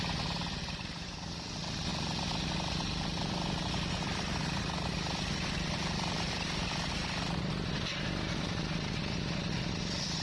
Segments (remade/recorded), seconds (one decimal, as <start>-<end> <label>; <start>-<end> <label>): 0.0-1.9 remade; 1.9-3.9 recorded; 3.9-10.2 remade